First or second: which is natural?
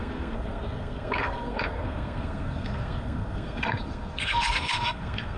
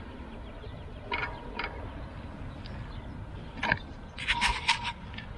second